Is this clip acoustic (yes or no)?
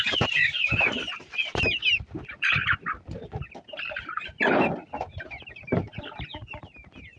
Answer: no